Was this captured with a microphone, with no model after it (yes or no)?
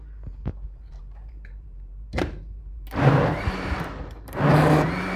no